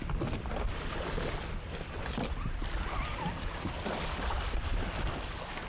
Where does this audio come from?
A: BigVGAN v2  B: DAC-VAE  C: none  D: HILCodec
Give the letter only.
C